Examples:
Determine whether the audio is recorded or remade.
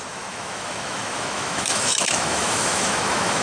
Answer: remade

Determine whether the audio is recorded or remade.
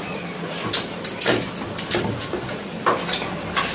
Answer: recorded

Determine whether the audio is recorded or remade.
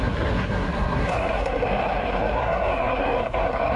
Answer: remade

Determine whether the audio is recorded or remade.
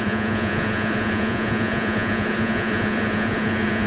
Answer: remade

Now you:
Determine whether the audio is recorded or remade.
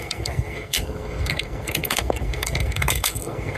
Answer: remade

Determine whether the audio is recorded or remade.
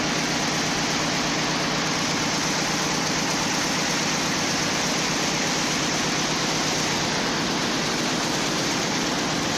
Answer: recorded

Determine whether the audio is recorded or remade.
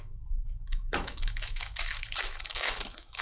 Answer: remade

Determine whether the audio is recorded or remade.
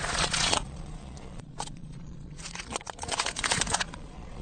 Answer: remade